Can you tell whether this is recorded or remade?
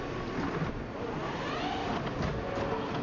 recorded